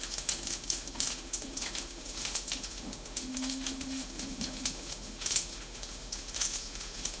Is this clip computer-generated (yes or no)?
yes